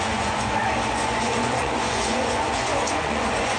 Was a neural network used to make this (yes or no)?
yes